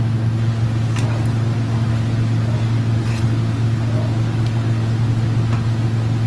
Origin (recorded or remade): recorded